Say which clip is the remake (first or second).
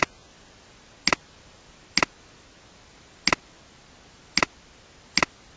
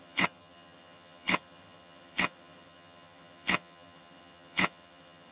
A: second